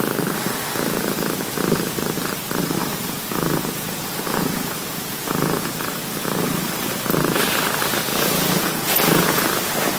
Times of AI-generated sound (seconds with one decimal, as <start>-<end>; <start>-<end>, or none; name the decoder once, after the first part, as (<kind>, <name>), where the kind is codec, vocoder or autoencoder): 2.8-6.0 (vocoder, Vocos); 8.1-9.4